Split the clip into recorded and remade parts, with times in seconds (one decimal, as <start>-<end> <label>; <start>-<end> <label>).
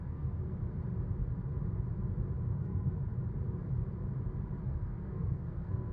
0.0-0.8 remade; 0.8-2.5 recorded; 2.5-3.0 remade; 3.0-4.6 recorded; 4.6-5.9 remade